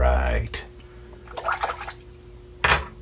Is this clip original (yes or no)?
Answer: yes